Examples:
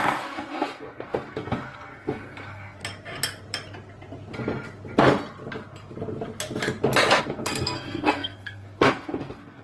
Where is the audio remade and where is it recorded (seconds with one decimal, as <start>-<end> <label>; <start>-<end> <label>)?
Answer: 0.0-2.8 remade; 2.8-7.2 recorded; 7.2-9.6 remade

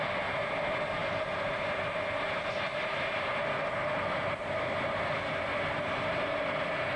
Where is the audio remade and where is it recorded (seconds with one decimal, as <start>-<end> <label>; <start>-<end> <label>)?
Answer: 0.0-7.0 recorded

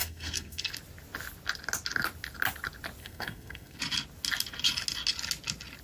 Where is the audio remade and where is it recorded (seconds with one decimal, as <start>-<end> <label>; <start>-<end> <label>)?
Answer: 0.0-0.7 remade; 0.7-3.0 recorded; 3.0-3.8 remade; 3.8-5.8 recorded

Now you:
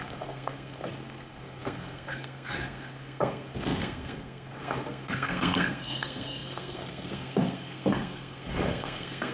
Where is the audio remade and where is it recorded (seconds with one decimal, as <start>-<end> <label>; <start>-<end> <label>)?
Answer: 0.0-9.3 remade

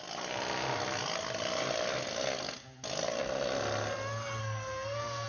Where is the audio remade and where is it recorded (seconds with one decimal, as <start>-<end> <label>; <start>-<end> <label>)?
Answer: 0.0-4.4 recorded; 4.4-5.3 remade

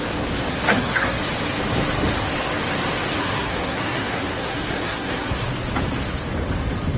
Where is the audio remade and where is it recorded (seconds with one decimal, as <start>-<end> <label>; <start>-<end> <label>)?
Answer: 0.0-0.5 recorded; 0.5-1.2 remade; 1.2-3.2 recorded; 3.2-5.5 remade; 5.5-7.0 recorded